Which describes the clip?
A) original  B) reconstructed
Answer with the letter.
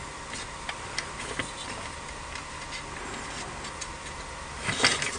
A